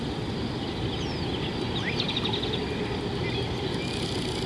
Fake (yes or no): no